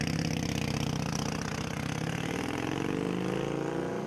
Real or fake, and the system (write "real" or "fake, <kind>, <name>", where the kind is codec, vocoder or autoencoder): real